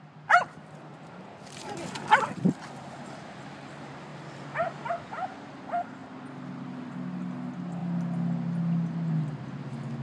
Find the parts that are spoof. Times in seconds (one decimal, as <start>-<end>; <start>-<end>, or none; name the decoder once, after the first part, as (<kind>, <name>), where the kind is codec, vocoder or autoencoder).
none

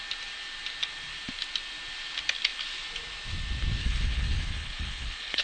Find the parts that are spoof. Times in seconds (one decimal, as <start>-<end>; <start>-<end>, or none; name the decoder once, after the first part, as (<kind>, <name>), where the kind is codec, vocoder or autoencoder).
3.8-5.4 (codec, HILCodec)

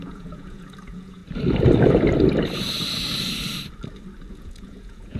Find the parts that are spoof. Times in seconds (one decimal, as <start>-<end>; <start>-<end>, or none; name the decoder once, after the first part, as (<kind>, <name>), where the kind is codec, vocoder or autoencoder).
0.0-1.2 (vocoder, Vocos); 4.3-5.2